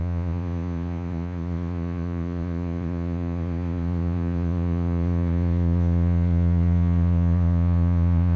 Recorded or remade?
remade